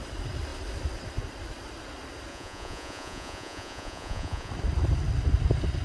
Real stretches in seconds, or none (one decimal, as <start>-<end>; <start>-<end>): 0.0-2.3; 4.5-5.8